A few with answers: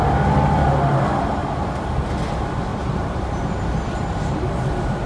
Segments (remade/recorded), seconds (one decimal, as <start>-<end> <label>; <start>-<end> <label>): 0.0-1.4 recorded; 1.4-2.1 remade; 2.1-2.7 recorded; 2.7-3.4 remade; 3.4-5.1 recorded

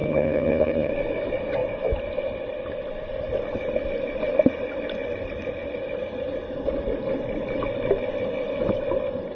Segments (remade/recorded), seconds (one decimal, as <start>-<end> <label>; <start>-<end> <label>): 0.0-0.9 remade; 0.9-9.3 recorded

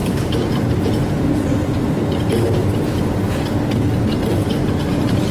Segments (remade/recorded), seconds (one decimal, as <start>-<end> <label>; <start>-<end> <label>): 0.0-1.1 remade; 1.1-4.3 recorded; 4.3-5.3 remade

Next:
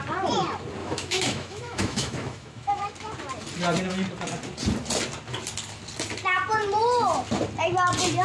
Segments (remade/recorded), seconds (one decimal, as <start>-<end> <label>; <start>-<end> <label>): 0.0-0.8 recorded; 0.8-2.8 remade; 2.8-8.2 recorded

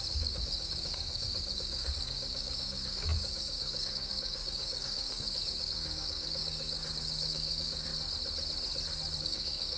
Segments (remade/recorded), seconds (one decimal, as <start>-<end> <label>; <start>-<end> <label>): 0.0-7.9 remade; 7.9-9.2 recorded; 9.2-9.8 remade

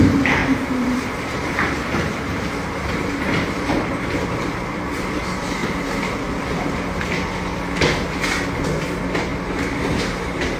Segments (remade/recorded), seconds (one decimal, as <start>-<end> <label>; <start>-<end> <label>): 0.0-5.6 remade; 5.6-8.9 recorded; 8.9-10.6 remade

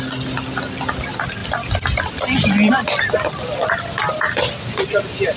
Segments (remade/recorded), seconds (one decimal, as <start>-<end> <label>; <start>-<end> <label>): 0.0-5.4 recorded